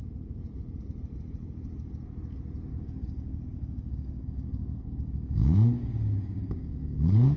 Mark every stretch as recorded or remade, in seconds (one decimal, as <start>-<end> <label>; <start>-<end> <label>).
0.0-2.7 recorded; 2.7-7.4 remade